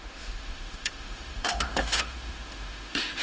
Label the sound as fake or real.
fake